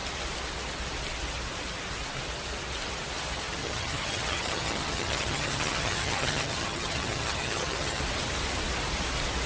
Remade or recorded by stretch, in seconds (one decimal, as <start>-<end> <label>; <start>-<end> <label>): 0.0-3.6 recorded; 3.6-8.0 remade; 8.0-9.5 recorded